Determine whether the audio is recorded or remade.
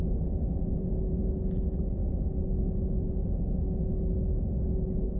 remade